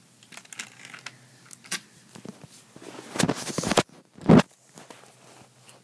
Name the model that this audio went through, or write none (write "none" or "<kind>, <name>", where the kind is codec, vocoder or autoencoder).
none